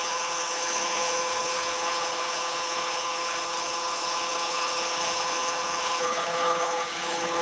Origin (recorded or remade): remade